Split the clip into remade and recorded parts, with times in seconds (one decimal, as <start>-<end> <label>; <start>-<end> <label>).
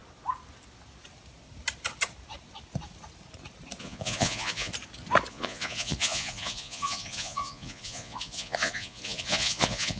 0.0-3.8 recorded; 3.8-4.7 remade; 4.7-5.3 recorded; 5.3-10.0 remade